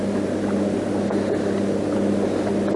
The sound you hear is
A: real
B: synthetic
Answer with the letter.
A